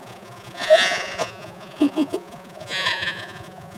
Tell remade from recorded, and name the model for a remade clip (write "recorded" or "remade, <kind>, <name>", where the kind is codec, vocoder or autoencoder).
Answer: remade, vocoder, Vocos